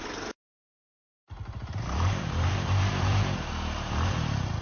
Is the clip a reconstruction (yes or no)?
yes